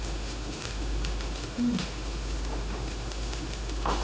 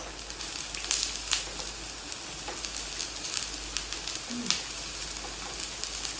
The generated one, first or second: first